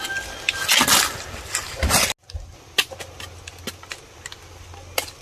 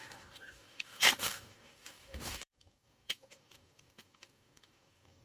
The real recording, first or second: first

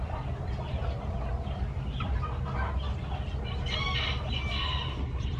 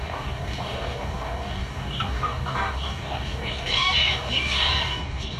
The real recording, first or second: first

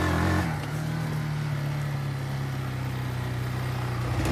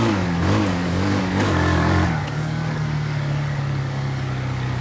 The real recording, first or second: first